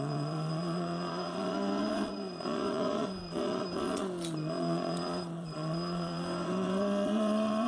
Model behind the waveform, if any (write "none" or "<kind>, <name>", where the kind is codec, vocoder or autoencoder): vocoder, Vocos